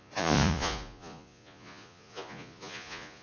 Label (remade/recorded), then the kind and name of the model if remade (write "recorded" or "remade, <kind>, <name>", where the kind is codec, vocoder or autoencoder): remade, vocoder, Vocos